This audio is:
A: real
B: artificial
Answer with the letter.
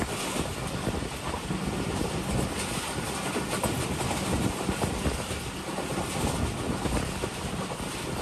A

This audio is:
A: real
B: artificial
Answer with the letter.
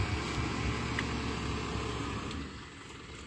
A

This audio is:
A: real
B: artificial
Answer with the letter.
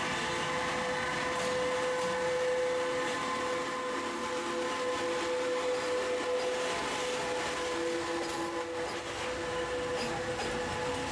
A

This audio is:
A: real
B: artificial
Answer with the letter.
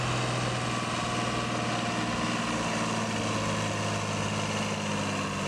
A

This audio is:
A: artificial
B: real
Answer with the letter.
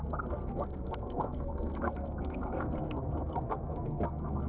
A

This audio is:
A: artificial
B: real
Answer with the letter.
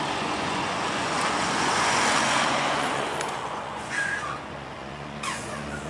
A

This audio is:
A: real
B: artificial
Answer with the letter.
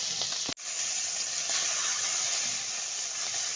A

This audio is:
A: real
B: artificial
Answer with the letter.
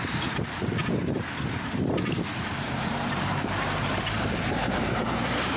B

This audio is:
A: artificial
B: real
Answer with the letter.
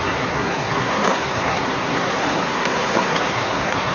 A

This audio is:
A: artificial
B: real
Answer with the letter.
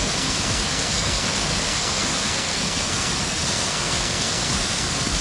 A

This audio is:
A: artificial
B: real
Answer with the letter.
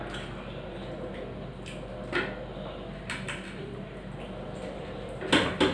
B